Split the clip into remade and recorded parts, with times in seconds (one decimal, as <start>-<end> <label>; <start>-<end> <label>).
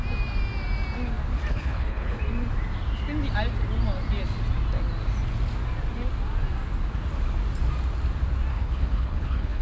0.0-1.5 recorded; 1.5-2.2 remade; 2.2-8.5 recorded; 8.5-9.6 remade